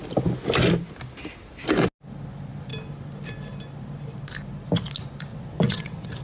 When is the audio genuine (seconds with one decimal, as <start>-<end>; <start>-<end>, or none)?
0.0-5.3

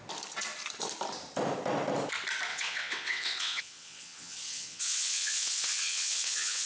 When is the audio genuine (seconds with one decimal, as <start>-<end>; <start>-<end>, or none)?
0.0-2.5

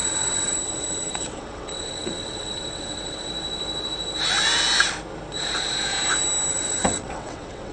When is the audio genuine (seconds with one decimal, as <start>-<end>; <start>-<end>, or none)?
3.3-6.5

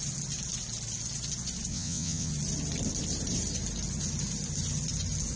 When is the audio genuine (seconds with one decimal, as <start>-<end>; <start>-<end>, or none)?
0.0-1.7; 2.3-5.4

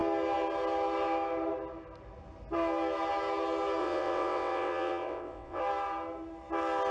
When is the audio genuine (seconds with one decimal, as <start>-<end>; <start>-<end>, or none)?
0.0-3.8; 5.6-6.9

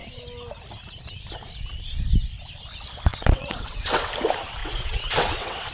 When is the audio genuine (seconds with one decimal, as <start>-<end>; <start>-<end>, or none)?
0.0-3.1; 4.1-4.6

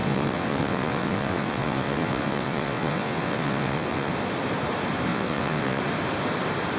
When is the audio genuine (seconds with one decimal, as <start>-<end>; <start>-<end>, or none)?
4.1-5.1; 5.8-6.8